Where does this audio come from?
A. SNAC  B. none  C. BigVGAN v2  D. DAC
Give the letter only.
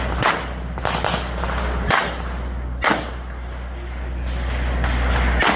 B